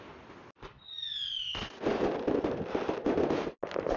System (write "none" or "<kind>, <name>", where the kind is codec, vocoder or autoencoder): none